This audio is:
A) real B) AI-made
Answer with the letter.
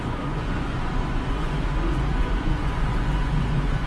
B